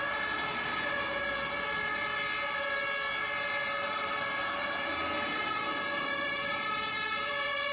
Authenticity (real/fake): real